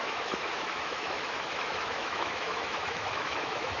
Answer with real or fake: fake